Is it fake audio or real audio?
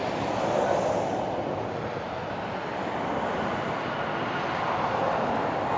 real